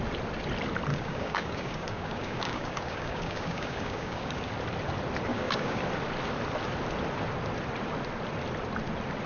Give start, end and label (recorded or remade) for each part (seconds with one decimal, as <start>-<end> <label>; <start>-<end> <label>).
0.0-0.9 recorded; 0.9-4.5 remade; 4.5-5.3 recorded; 5.3-5.8 remade; 5.8-9.3 recorded